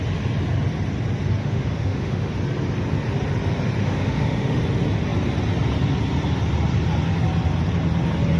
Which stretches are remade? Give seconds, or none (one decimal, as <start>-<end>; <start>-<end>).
1.4-2.3; 3.8-4.6